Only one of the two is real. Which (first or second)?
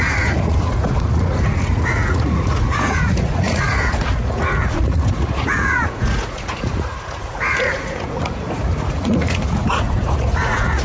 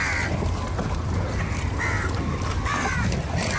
second